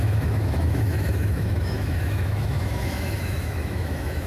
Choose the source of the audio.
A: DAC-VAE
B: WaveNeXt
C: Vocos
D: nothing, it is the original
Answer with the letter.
A